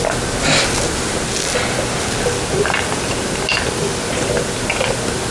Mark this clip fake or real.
real